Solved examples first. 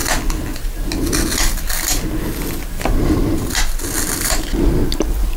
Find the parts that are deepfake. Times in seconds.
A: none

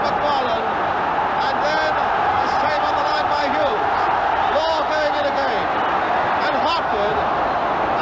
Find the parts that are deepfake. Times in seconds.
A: 2.0-4.5 (vocoder, BigVGAN v2)

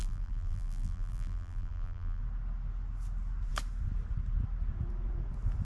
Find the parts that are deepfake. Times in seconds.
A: 0.0-2.2 (vocoder, BigVGAN v2)